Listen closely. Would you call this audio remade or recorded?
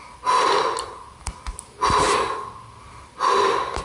recorded